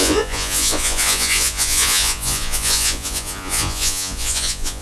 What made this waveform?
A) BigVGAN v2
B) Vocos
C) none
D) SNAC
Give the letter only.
B